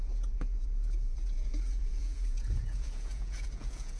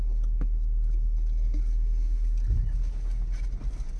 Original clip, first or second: second